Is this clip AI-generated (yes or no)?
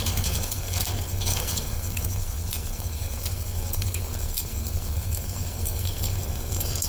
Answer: yes